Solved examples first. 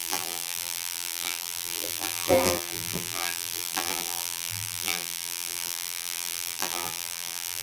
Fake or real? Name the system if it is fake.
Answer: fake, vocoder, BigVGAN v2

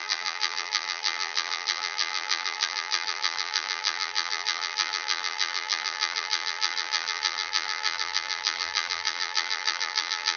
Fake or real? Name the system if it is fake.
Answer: fake, vocoder, BigVGAN v2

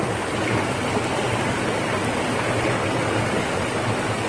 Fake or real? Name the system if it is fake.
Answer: real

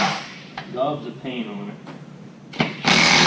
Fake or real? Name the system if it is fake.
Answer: fake, vocoder, BigVGAN v2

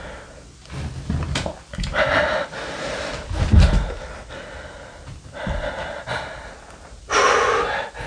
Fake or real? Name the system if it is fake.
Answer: real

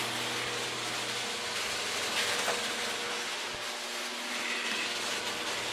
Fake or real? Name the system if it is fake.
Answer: real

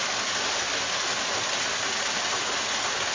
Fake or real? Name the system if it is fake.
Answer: real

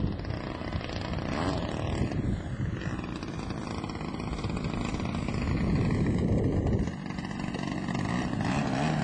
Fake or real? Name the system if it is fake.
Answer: real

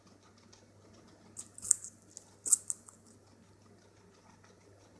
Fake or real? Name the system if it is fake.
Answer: real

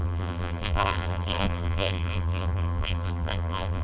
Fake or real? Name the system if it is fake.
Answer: fake, vocoder, BigVGAN v2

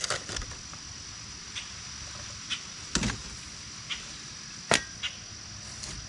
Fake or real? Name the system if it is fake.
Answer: real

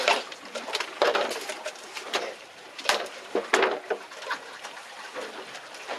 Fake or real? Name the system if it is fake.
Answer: fake, vocoder, BigVGAN v2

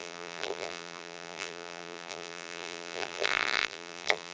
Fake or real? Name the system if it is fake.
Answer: fake, vocoder, BigVGAN v2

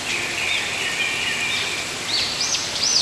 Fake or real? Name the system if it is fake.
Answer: real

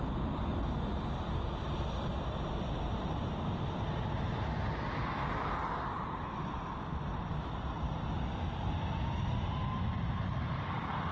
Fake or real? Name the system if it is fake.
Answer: real